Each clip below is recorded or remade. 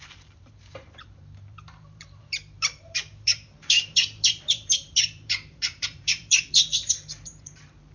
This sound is remade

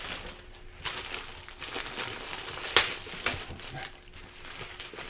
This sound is recorded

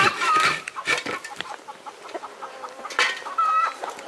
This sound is remade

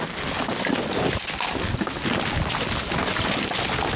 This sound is recorded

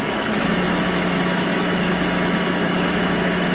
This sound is remade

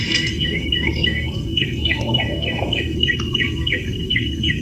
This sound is remade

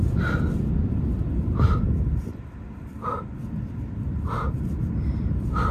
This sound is recorded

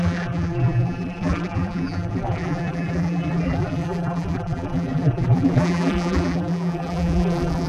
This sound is remade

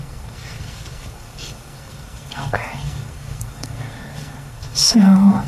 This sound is remade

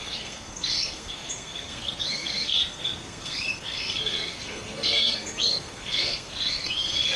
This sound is remade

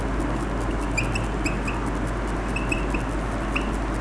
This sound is recorded